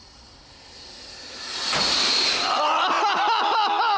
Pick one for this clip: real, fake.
real